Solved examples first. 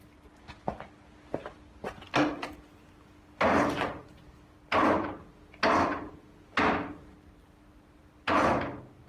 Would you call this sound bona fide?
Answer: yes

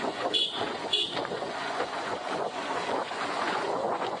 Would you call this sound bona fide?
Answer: no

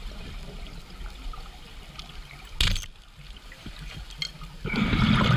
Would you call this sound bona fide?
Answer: yes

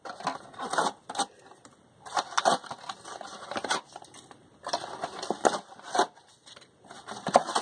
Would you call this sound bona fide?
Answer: yes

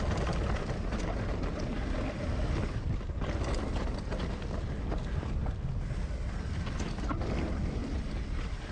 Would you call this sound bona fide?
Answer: yes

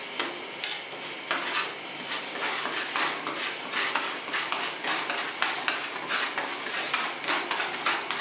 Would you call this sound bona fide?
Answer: yes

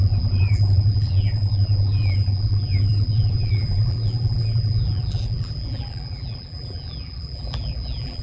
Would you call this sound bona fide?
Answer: no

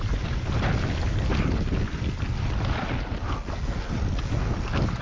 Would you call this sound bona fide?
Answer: yes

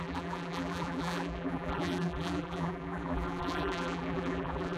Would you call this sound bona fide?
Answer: no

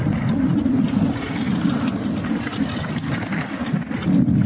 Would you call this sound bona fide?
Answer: yes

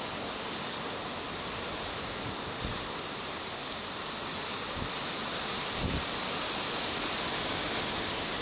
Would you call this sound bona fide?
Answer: yes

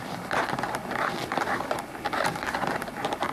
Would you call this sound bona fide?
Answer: no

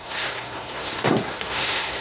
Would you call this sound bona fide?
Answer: no